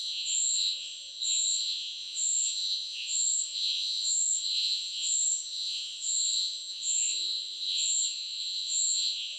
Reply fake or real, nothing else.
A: fake